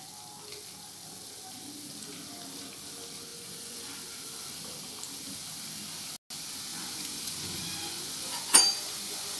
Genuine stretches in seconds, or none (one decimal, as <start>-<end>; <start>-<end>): 0.0-3.3; 3.9-6.7